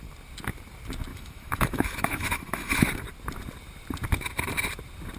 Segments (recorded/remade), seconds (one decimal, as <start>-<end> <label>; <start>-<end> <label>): 0.0-1.1 recorded; 1.1-2.9 remade; 2.9-5.2 recorded